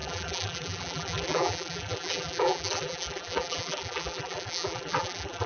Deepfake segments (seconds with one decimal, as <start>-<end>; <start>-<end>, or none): 0.0-5.5